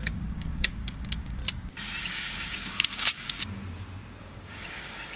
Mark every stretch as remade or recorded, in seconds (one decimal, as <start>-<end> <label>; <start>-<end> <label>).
0.0-1.4 remade; 1.4-2.0 recorded; 2.0-3.6 remade; 3.6-4.2 recorded; 4.2-5.2 remade